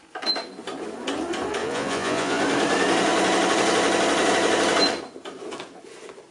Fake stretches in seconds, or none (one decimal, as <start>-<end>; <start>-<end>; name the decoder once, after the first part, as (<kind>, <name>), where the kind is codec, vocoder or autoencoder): 1.6-2.4 (vocoder, Vocos)